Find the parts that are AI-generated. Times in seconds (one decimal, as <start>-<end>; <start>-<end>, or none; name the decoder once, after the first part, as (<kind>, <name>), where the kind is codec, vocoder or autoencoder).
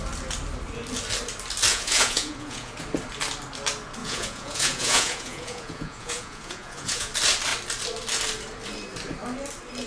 1.7-2.8 (vocoder, Vocos); 4.0-7.1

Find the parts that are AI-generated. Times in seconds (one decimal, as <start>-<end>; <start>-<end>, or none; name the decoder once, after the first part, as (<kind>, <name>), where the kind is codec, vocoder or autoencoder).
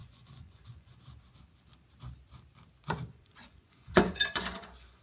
0.0-1.0 (vocoder, Vocos); 3.1-5.0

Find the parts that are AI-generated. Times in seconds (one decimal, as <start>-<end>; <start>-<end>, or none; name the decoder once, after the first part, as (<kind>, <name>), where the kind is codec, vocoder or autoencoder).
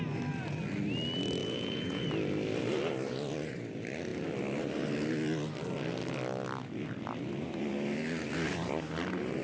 1.4-2.0 (vocoder, Vocos)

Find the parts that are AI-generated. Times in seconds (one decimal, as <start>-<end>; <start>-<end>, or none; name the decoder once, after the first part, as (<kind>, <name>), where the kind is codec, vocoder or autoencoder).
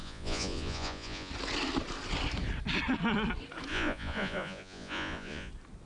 0.0-1.3 (vocoder, Vocos); 3.7-5.5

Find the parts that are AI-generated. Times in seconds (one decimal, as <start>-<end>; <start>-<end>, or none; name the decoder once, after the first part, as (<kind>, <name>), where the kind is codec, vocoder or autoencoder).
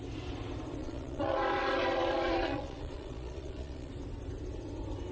0.8-3.9 (vocoder, Vocos)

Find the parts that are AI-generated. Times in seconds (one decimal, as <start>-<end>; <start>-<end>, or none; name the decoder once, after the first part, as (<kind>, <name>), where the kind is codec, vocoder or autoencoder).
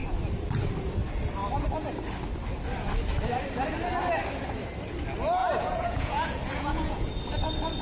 5.4-7.2 (vocoder, Vocos)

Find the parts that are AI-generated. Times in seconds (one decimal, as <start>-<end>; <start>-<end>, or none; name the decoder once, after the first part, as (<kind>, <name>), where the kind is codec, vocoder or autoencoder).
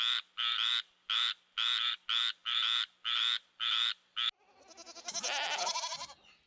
none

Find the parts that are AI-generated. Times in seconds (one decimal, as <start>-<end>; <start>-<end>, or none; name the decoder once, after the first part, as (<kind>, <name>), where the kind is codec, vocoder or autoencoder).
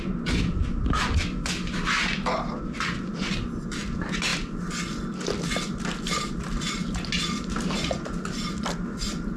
none